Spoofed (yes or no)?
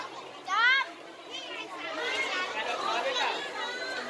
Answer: no